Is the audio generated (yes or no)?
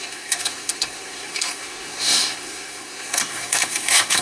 yes